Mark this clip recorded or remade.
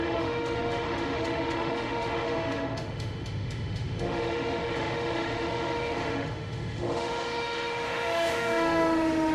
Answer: remade